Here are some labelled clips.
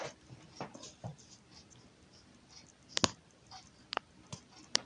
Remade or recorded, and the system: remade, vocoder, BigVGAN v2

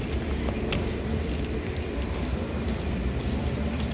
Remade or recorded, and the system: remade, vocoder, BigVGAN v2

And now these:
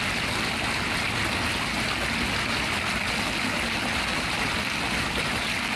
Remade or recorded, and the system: recorded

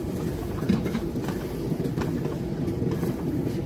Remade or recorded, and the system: recorded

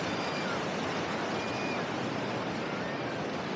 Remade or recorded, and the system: recorded